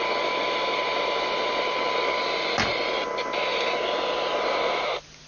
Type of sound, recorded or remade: recorded